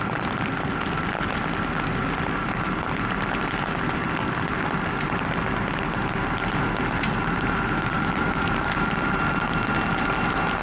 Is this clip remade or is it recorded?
recorded